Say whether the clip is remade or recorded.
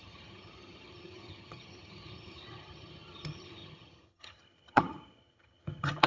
remade